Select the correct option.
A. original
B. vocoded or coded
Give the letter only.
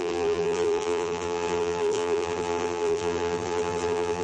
B